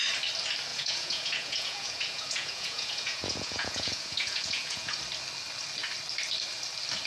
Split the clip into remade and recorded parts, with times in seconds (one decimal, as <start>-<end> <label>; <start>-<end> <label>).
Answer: 0.0-0.7 recorded; 0.7-5.0 remade; 5.0-7.1 recorded